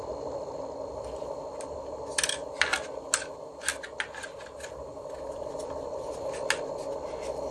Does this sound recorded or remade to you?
recorded